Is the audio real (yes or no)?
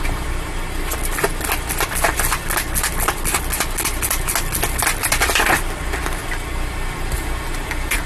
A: yes